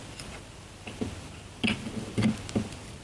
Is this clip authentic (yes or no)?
yes